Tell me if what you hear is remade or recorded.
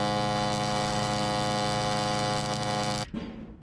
recorded